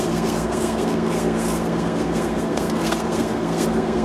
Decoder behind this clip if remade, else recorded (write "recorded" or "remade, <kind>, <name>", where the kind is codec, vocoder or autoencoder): remade, codec, SNAC